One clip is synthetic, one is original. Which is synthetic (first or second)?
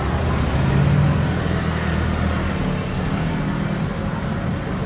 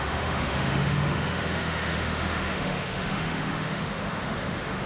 second